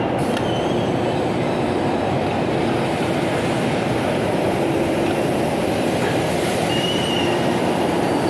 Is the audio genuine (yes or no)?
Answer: no